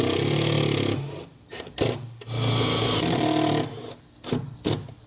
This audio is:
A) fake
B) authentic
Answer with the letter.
B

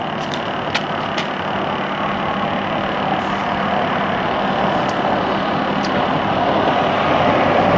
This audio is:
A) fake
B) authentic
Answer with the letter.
B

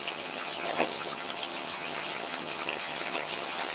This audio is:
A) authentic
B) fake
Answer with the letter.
B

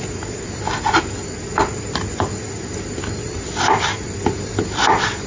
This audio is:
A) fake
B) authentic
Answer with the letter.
B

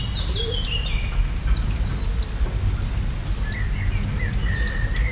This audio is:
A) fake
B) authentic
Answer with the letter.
B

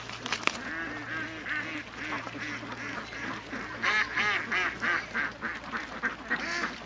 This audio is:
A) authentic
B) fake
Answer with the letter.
A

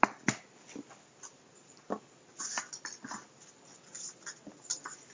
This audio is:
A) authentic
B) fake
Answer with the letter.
A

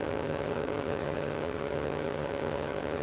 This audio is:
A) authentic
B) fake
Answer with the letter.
B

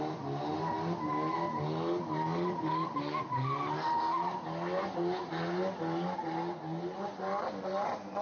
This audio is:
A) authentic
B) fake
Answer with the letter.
A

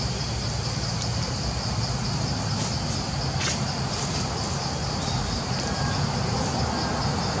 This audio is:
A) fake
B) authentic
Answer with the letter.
B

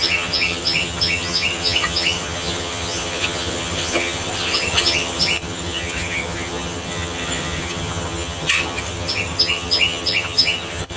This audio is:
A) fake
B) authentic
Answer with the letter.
A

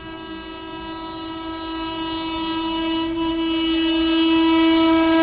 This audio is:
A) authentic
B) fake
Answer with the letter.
A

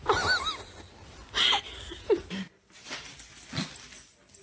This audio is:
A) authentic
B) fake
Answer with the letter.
A